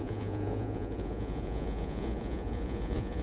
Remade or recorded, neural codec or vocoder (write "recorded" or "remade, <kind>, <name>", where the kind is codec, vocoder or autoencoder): remade, vocoder, Vocos